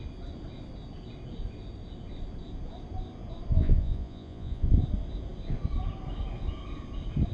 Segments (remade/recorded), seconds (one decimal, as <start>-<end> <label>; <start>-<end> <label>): 0.0-3.5 recorded; 3.5-4.7 remade; 4.7-7.3 recorded